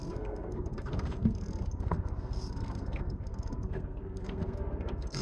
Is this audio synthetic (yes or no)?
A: yes